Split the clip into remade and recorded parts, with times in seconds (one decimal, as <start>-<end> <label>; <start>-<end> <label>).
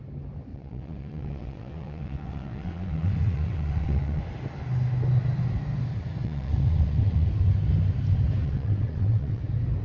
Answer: 0.0-0.5 recorded; 0.5-4.2 remade; 4.2-6.2 recorded; 6.2-7.3 remade; 7.3-8.4 recorded; 8.4-9.4 remade; 9.4-9.8 recorded